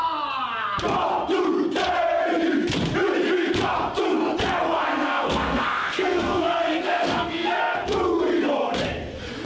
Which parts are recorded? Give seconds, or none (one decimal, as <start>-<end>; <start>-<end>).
0.0-4.9; 7.6-9.5